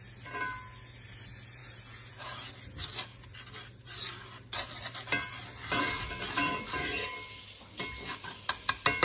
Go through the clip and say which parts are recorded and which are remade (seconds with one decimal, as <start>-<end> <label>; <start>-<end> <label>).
0.0-1.6 recorded; 1.6-2.5 remade; 2.5-9.0 recorded